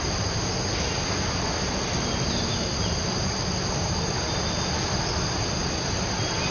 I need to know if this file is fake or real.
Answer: real